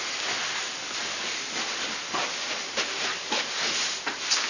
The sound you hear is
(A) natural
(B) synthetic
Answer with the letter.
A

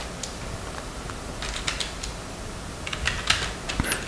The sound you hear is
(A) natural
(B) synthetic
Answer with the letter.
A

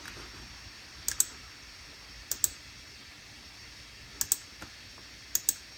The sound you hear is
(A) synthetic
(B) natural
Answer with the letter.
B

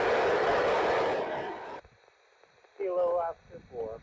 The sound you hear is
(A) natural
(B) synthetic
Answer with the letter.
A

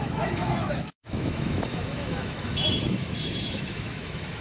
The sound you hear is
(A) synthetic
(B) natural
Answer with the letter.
A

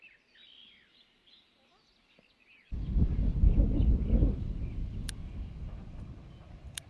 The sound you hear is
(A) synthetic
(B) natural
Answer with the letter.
B